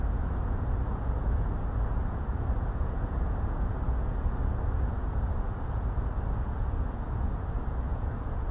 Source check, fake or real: fake